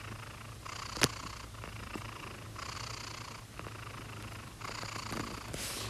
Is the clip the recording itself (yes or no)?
yes